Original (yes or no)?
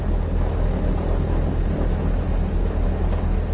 yes